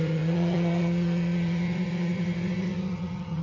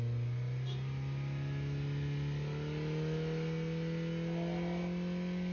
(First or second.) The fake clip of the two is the first